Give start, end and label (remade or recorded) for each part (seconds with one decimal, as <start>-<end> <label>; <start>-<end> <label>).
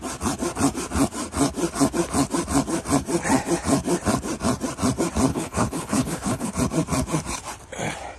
0.0-5.3 recorded; 5.3-6.5 remade; 6.5-8.2 recorded